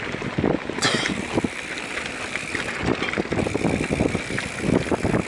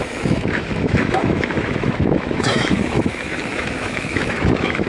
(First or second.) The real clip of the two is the first